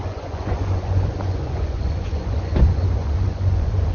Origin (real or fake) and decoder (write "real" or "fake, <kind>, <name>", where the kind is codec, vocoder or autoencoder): fake, vocoder, Vocos